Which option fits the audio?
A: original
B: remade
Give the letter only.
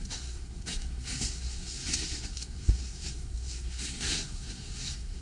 B